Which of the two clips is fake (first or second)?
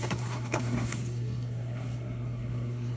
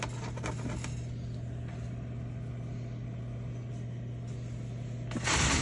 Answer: first